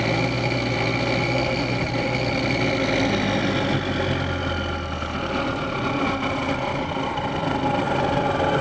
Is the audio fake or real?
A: real